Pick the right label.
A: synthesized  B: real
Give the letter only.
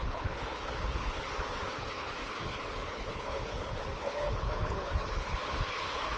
A